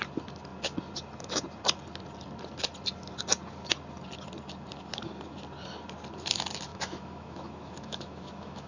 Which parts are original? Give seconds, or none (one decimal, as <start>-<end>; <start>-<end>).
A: 0.0-6.7